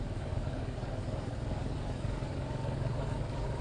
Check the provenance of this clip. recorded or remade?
remade